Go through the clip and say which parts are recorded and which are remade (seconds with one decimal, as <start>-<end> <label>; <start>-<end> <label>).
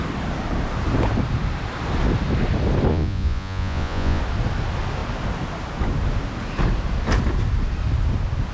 0.0-2.9 recorded; 2.9-4.2 remade; 4.2-8.5 recorded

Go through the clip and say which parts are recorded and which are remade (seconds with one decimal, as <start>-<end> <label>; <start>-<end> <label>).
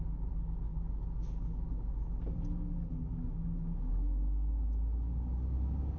0.0-6.0 recorded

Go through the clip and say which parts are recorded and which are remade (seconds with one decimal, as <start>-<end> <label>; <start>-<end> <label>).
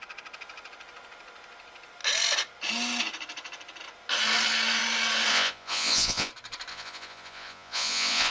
0.0-5.3 recorded; 5.3-6.3 remade; 6.3-6.7 recorded; 6.7-8.3 remade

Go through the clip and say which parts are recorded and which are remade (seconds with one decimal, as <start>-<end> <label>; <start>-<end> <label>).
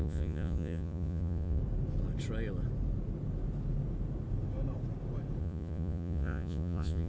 0.0-1.6 remade; 1.6-5.4 recorded; 5.4-7.1 remade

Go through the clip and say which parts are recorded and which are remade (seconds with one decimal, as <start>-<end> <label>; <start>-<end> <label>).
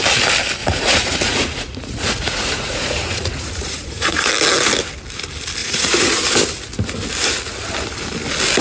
0.0-0.6 recorded; 0.6-4.3 remade; 4.3-5.6 recorded; 5.6-6.2 remade; 6.2-8.6 recorded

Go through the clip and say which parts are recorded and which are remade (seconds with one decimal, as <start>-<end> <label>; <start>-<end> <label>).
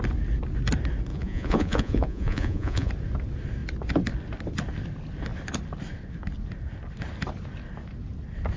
0.0-1.1 recorded; 1.1-2.9 remade; 2.9-8.6 recorded